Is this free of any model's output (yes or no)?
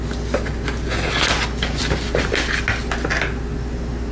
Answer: yes